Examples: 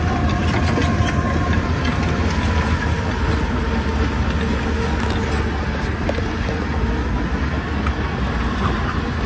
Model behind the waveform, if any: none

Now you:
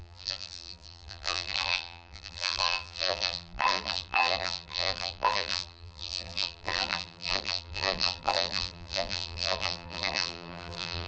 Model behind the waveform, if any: vocoder, BigVGAN v2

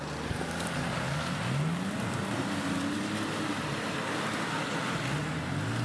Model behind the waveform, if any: none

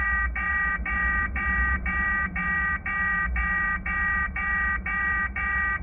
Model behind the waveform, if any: vocoder, BigVGAN v2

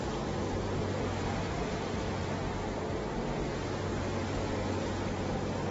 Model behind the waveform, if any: none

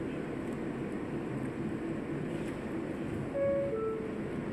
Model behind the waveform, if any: none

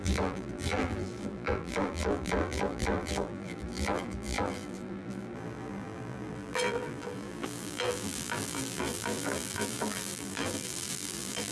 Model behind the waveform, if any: vocoder, BigVGAN v2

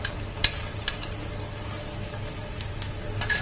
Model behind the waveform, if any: none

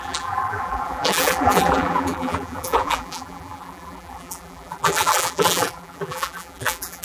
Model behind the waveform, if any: vocoder, BigVGAN v2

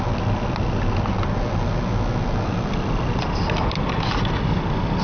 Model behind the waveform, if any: none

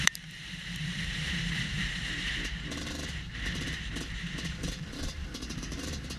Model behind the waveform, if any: vocoder, BigVGAN v2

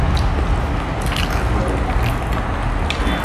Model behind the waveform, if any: none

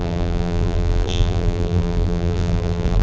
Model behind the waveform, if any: vocoder, BigVGAN v2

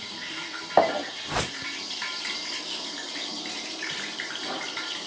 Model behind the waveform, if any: vocoder, BigVGAN v2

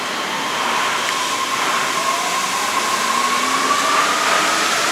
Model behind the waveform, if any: none